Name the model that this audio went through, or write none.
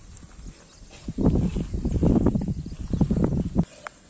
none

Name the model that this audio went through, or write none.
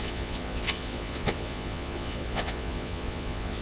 vocoder, Vocos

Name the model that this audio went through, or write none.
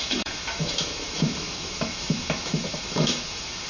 autoencoder, DAC-VAE